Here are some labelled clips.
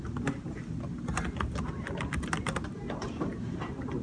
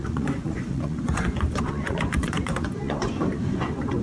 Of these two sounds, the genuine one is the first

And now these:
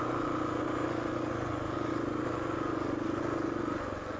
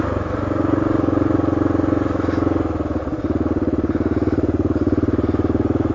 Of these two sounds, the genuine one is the second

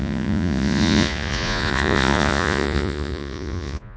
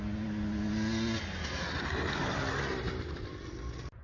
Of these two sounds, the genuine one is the second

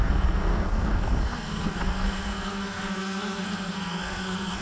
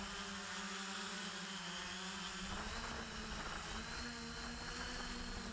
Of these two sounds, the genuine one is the second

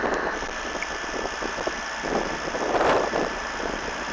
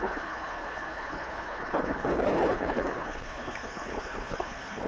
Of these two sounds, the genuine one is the first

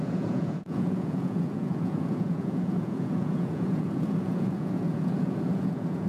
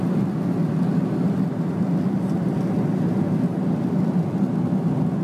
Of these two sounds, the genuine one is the second